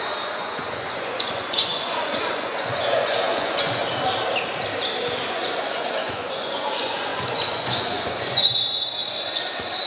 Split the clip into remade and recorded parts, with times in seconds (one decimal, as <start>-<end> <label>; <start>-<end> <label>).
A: 0.0-3.8 remade; 3.8-5.3 recorded; 5.3-9.9 remade